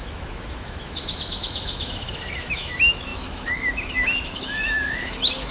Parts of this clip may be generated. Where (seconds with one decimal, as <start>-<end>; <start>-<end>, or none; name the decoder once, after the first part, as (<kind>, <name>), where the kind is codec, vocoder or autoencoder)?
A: 0.0-5.5 (autoencoder, DAC-VAE)